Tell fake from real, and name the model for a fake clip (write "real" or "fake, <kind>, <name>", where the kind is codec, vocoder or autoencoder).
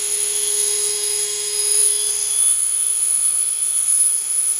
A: fake, autoencoder, DAC-VAE